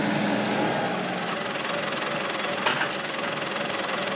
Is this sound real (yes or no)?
yes